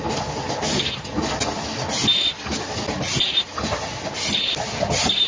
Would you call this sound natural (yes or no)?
yes